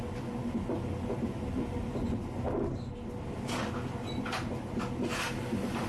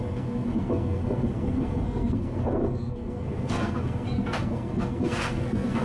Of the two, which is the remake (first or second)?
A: second